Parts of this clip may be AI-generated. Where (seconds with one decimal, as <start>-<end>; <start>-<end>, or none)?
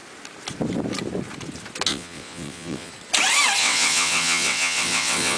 1.9-2.9; 3.6-5.4